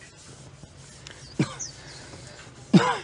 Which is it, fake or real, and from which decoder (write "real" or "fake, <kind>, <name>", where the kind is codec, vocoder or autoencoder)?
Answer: real